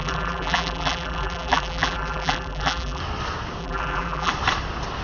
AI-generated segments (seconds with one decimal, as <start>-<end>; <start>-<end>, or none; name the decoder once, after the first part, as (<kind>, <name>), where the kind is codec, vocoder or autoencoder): 0.0-3.0 (vocoder, BigVGAN v2); 3.6-4.3